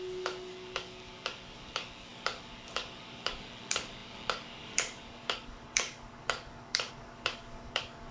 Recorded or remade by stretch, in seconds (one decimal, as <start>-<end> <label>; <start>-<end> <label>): 0.0-8.1 remade